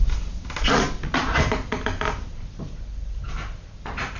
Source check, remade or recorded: recorded